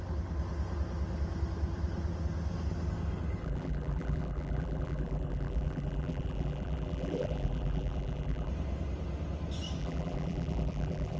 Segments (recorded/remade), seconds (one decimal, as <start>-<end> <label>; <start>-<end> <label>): 0.0-3.4 recorded; 3.4-8.5 remade; 8.5-9.8 recorded; 9.8-11.2 remade